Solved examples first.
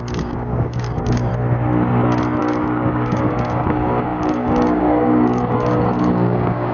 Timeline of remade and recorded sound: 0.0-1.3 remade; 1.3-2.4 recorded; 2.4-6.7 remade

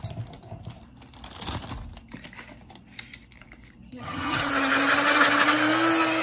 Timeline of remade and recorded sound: 0.0-3.9 recorded; 3.9-4.5 remade; 4.5-6.2 recorded

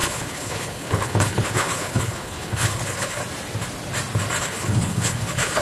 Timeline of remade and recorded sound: 0.0-3.2 remade; 3.2-4.4 recorded; 4.4-5.6 remade